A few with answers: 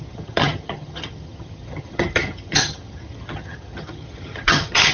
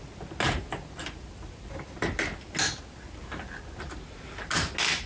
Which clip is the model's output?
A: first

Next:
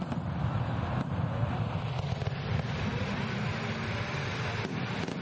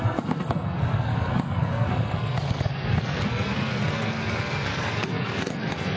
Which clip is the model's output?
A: second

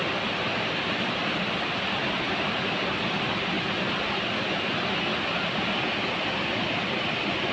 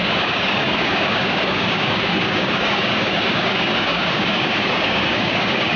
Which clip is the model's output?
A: second